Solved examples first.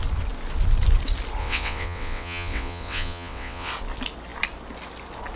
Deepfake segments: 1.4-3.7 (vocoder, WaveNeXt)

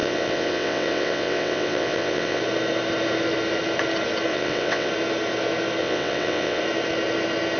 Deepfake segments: 0.0-2.4 (vocoder, WaveNeXt); 4.3-4.9; 5.8-6.6